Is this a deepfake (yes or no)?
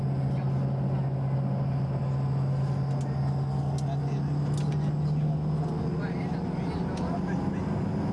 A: no